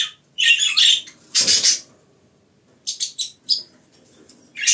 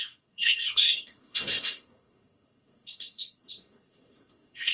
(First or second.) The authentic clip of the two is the first